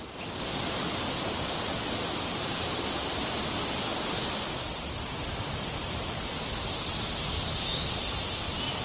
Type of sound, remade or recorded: recorded